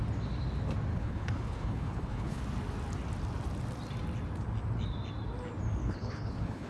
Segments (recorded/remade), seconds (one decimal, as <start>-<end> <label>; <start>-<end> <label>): 0.0-0.9 recorded; 0.9-2.4 remade; 2.4-5.8 recorded; 5.8-6.7 remade